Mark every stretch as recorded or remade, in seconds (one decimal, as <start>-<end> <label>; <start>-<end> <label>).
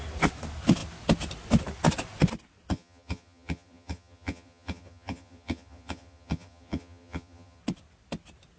0.0-2.7 recorded; 2.7-7.6 remade; 7.6-8.6 recorded